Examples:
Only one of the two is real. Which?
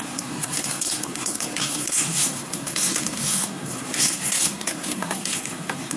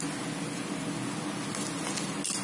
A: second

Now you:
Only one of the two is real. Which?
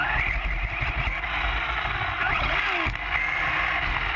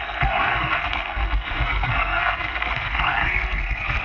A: first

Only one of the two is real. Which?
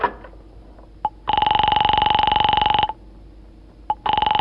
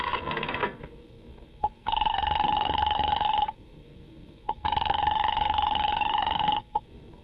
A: first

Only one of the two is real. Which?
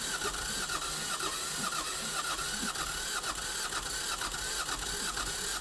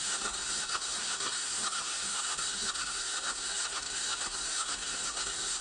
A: first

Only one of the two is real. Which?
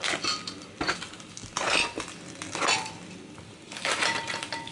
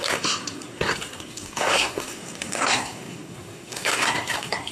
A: first